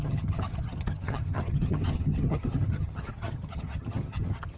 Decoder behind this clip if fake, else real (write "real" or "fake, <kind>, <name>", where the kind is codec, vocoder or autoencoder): fake, vocoder, HiFi-GAN